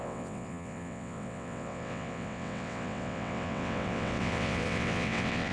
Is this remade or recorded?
remade